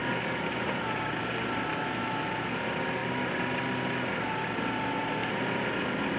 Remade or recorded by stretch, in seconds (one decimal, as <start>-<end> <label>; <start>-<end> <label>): 0.0-1.7 recorded; 1.7-2.3 remade; 2.3-6.2 recorded